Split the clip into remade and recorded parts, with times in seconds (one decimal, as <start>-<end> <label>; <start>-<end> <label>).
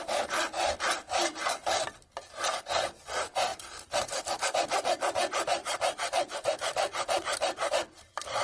0.0-3.5 recorded; 3.5-4.2 remade; 4.2-5.6 recorded; 5.6-7.7 remade; 7.7-8.4 recorded